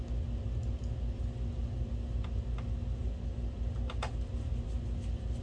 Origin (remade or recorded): recorded